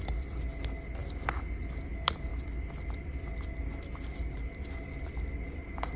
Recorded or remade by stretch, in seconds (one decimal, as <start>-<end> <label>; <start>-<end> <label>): 0.0-6.0 recorded